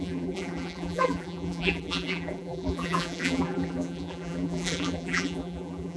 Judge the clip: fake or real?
fake